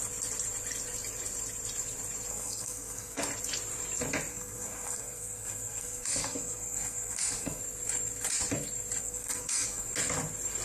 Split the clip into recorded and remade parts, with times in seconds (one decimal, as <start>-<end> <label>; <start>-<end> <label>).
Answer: 0.0-2.3 recorded; 2.3-3.2 remade; 3.2-4.3 recorded; 4.3-7.6 remade; 7.6-9.0 recorded; 9.0-9.9 remade; 9.9-10.6 recorded